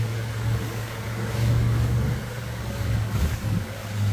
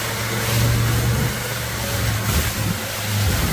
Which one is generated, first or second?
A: first